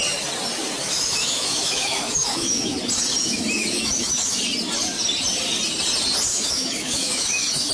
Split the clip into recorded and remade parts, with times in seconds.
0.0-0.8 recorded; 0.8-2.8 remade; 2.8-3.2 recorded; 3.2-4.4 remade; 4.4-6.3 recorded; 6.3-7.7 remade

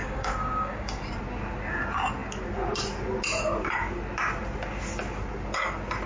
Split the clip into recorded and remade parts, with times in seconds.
0.0-1.0 remade; 1.0-6.1 recorded